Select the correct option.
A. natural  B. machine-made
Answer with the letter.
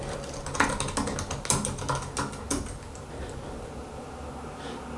A